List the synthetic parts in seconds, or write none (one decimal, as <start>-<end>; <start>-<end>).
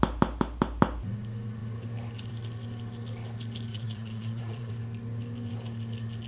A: 3.7-4.7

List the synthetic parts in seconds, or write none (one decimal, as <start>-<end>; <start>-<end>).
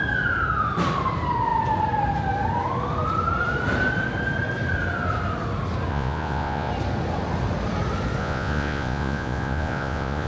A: 5.9-6.7; 8.2-10.3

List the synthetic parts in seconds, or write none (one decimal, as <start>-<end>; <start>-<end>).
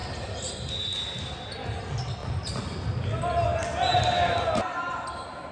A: none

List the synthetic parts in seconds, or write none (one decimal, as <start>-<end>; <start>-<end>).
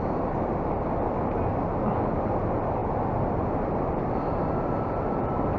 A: none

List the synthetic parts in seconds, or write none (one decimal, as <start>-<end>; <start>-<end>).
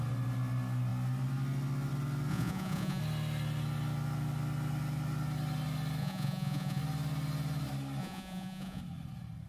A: 2.3-3.0; 6.0-6.8; 8.0-8.8